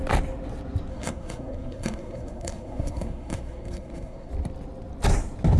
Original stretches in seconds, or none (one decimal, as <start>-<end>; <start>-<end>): 0.0-0.9; 4.3-5.6